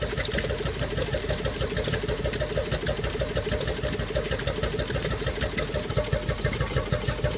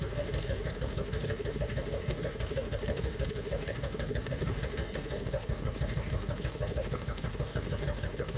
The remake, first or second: second